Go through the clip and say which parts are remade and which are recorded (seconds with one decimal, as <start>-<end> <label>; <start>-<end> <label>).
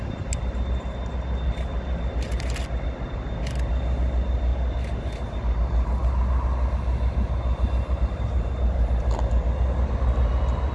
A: 0.0-10.7 recorded